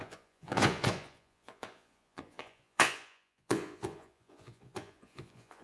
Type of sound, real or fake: fake